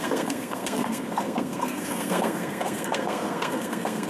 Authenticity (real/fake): fake